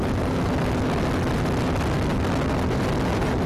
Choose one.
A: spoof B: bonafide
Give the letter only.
B